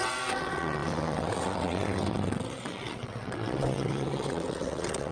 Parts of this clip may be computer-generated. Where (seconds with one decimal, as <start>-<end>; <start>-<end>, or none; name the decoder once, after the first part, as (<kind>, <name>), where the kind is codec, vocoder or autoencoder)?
0.0-5.1 (vocoder, WaveNeXt)